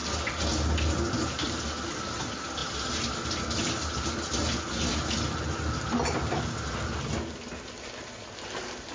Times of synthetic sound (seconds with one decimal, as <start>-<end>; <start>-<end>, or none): none